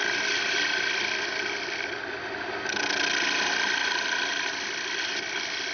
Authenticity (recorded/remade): recorded